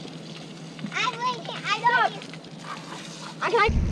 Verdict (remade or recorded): recorded